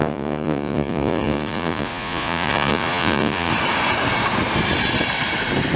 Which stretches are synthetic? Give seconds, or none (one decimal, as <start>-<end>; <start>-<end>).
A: 0.0-3.5